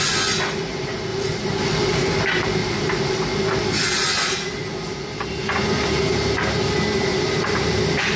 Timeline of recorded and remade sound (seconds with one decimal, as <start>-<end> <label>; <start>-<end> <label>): 0.0-1.1 recorded; 1.1-1.9 remade; 1.9-2.6 recorded; 2.6-3.3 remade; 3.3-7.1 recorded; 7.1-8.2 remade